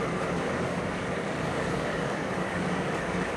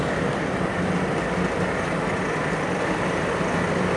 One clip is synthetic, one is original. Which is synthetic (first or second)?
first